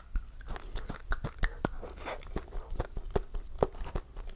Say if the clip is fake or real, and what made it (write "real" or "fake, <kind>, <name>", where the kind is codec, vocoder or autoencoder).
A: real